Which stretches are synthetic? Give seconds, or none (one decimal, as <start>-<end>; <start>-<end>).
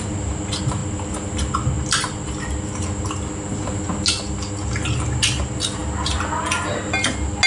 none